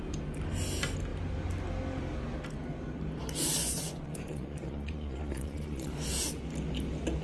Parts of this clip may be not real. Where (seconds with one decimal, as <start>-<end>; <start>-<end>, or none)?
3.6-5.9